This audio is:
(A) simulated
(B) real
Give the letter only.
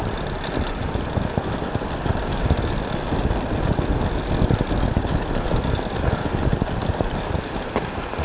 B